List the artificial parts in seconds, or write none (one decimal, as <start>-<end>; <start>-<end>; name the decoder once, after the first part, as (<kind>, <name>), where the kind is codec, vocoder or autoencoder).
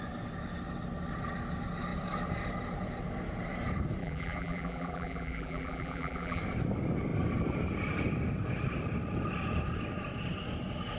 4.0-6.4 (vocoder, BigVGAN v2)